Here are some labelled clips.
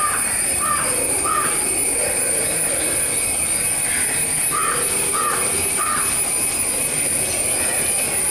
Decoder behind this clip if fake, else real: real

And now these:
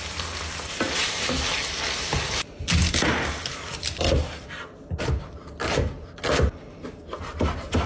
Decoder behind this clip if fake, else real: real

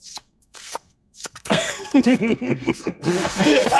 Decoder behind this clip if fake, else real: fake, codec, SNAC